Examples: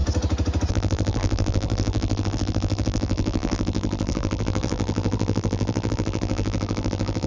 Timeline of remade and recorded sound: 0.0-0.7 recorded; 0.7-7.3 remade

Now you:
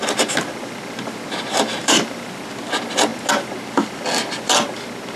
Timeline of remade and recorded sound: 0.0-1.8 recorded; 1.8-2.4 remade; 2.4-5.2 recorded

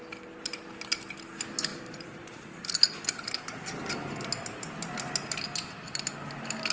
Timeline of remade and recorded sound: 0.0-1.7 recorded; 1.7-2.7 remade; 2.7-6.7 recorded

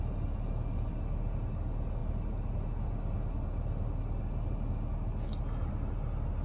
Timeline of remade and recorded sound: 0.0-6.4 recorded

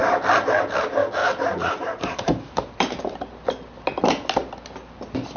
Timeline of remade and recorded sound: 0.0-1.2 recorded; 1.2-3.1 remade; 3.1-5.4 recorded

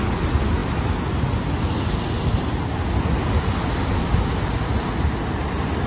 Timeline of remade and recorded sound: 0.0-5.9 recorded

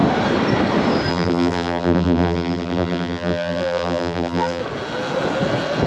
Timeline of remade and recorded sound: 0.0-1.1 recorded; 1.1-4.6 remade; 4.6-5.9 recorded

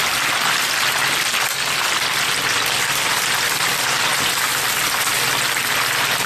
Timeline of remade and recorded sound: 0.0-6.3 recorded